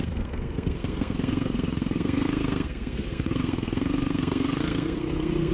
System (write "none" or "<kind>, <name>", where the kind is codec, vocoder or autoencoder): codec, SNAC